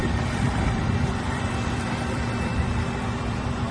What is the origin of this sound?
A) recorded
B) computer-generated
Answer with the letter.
B